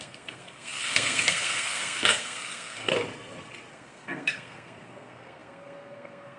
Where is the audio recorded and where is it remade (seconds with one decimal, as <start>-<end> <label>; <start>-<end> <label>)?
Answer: 0.0-2.9 remade; 2.9-3.7 recorded; 3.7-6.4 remade